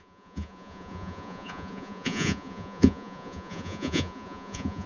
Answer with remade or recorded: remade